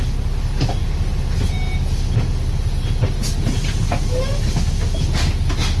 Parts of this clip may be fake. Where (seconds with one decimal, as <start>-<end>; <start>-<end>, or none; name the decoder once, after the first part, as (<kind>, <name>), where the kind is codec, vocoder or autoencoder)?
none